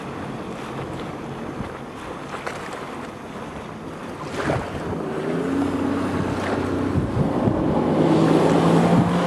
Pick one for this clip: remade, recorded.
recorded